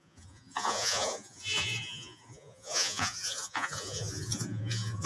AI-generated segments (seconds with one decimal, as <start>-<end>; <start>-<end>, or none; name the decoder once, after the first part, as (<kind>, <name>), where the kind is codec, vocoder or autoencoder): 0.0-5.1 (vocoder, Vocos)